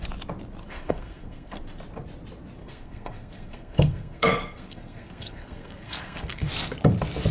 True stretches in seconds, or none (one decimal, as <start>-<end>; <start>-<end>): 0.0-0.6; 1.6-2.6; 6.5-7.3